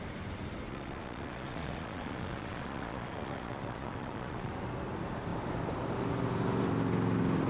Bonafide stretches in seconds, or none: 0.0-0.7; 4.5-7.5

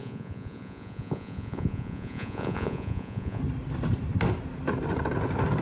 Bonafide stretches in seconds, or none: 3.4-5.6

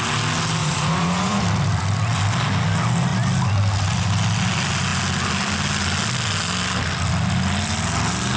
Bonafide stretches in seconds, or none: 0.0-0.6; 1.4-8.4

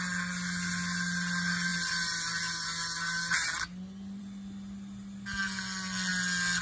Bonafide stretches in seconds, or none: 0.0-6.6